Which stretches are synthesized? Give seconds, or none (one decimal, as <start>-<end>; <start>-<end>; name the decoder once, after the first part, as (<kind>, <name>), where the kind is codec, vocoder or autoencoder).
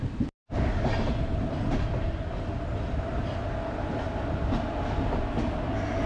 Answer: none